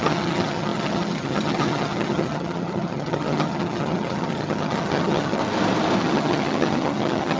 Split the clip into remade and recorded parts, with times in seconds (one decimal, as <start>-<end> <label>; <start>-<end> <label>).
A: 0.0-5.4 remade; 5.4-6.0 recorded; 6.0-7.4 remade